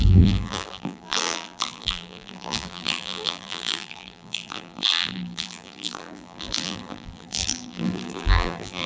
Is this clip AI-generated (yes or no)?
yes